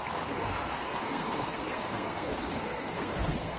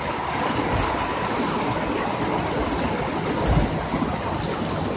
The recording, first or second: second